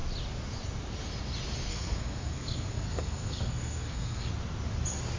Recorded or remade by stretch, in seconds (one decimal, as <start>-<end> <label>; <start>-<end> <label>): 0.0-1.7 recorded; 1.7-4.3 remade; 4.3-5.2 recorded